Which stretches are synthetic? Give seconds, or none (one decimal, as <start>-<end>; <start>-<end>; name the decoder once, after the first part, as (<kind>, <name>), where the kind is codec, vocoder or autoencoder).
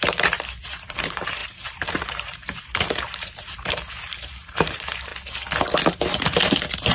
0.0-5.1 (vocoder, BigVGAN v2); 5.9-6.9